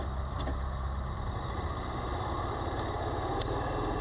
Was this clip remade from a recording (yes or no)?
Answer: no